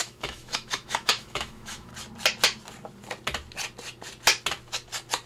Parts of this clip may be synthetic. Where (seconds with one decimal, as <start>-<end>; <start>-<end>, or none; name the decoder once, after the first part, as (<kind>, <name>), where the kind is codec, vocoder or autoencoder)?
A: 0.0-1.9 (autoencoder, DAC-VAE)